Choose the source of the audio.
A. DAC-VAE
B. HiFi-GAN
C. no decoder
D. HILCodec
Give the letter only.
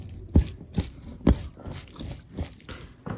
C